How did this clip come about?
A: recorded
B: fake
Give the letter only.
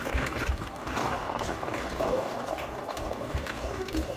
B